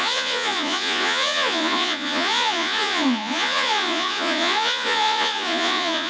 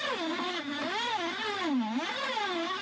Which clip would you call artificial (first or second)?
first